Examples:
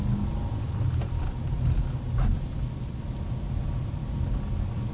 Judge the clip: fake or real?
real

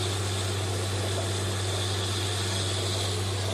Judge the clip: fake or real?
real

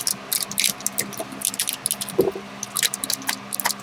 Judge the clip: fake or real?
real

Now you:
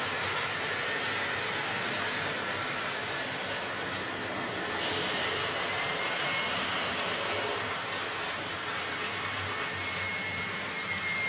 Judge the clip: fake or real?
real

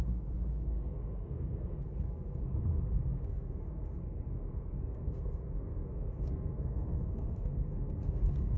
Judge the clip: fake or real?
fake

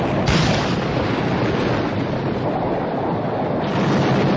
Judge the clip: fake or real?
real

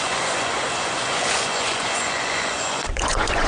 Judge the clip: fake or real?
fake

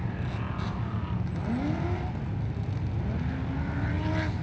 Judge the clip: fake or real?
real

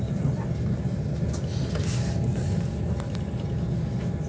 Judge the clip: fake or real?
real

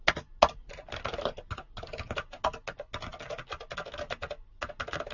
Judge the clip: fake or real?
real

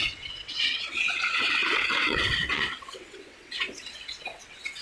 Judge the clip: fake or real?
fake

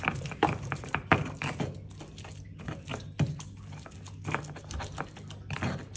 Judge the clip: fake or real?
real